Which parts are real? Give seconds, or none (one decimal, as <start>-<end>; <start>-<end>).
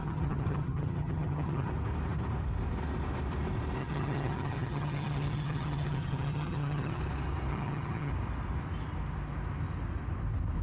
1.7-3.8; 7.0-7.5; 8.1-10.6